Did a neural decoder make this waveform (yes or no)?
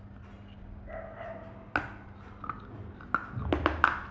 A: no